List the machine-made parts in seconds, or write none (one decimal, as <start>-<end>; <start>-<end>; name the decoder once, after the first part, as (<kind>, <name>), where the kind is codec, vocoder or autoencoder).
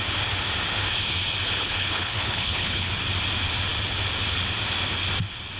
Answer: 1.6-2.9 (codec, HILCodec)